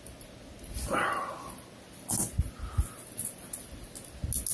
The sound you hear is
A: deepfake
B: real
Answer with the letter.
B